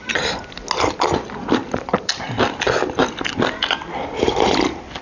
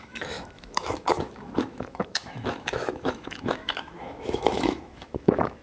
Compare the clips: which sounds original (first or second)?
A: first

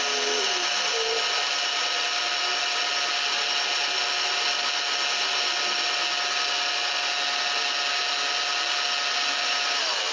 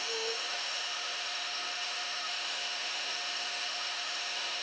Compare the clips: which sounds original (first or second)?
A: first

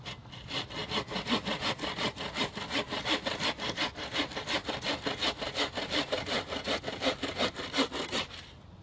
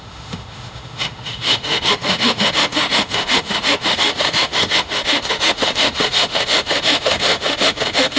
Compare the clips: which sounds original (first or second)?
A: first